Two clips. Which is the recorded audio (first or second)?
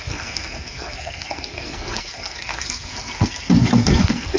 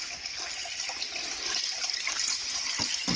second